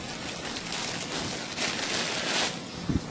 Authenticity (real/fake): real